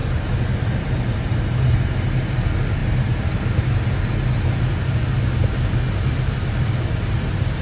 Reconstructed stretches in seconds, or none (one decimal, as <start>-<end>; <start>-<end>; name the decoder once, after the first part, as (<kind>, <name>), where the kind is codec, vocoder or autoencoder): none